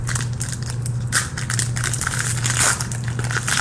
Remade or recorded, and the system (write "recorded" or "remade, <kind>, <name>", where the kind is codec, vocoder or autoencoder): recorded